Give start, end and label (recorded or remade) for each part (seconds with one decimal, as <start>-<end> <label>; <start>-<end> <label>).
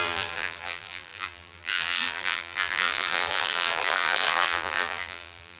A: 0.0-5.6 remade